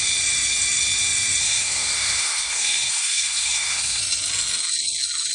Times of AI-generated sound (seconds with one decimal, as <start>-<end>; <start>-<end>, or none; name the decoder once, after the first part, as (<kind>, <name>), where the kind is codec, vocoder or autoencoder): 1.4-4.0 (codec, SNAC)